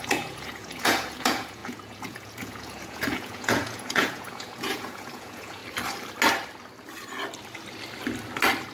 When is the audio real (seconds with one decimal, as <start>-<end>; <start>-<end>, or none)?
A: 5.6-8.7